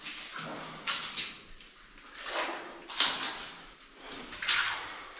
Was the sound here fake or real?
real